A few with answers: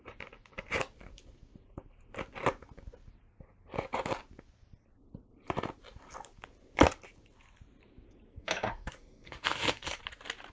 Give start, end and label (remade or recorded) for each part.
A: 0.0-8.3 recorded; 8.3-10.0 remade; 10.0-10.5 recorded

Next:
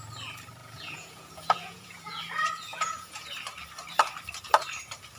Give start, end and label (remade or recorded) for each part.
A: 0.0-0.6 recorded; 0.6-2.3 remade; 2.3-2.7 recorded; 2.7-3.3 remade; 3.3-5.2 recorded

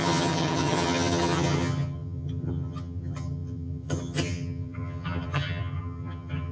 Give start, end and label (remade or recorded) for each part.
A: 0.0-6.5 remade

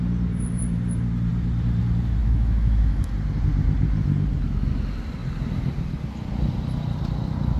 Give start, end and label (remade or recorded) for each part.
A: 0.0-2.2 recorded; 2.2-3.1 remade; 3.1-7.6 recorded

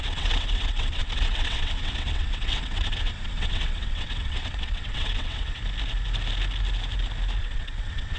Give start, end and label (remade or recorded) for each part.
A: 0.0-5.6 remade; 5.6-7.4 recorded; 7.4-8.2 remade

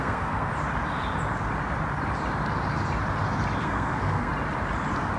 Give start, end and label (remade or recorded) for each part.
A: 0.0-0.5 remade; 0.5-3.6 recorded; 3.6-4.3 remade; 4.3-5.2 recorded